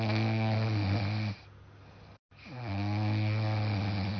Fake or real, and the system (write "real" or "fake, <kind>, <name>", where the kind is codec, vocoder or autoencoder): real